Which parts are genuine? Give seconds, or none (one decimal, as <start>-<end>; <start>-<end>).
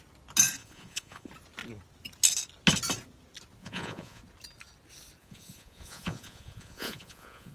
0.0-0.6; 1.3-3.6; 4.2-5.2